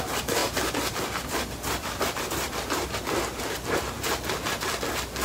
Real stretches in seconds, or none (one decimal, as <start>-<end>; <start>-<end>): 0.0-0.4; 3.3-5.2